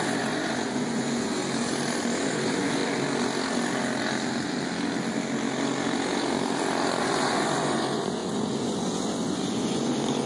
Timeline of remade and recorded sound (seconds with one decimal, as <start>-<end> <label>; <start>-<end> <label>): 0.0-1.4 remade; 1.4-2.2 recorded; 2.2-2.8 remade; 2.8-7.0 recorded; 7.0-10.3 remade